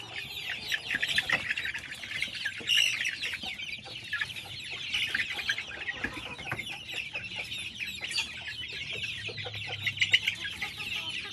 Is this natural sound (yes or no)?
yes